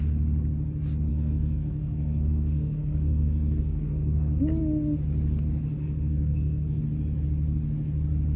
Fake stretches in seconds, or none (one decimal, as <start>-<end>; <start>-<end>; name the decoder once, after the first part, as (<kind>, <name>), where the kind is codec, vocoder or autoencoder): 1.1-4.4 (codec, SNAC); 5.8-6.8